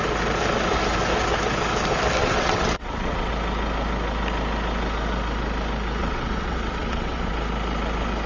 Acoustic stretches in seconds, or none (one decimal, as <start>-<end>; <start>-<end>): 0.0-2.2; 3.3-6.0; 7.3-8.3